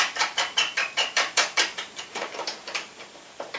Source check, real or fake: fake